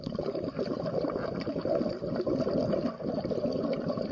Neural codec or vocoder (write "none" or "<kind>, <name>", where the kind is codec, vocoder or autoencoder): none